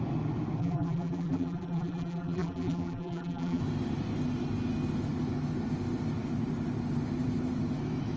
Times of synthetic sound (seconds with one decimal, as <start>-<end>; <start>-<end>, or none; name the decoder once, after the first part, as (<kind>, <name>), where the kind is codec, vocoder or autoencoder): 0.6-3.6 (vocoder, BigVGAN v2)